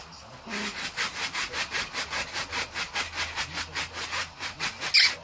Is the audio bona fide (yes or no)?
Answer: yes